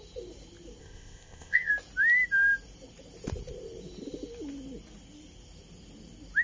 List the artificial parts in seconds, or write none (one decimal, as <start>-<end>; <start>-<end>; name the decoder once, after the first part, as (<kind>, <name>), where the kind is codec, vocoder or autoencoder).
0.8-1.7 (codec, ZipCodec)